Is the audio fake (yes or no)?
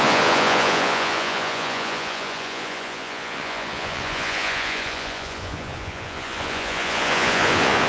yes